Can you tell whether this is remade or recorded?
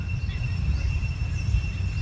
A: remade